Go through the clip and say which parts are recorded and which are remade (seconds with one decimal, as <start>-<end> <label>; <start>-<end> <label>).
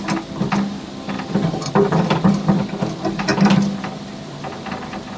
0.0-5.2 recorded